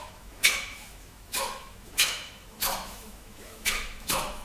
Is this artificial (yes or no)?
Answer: yes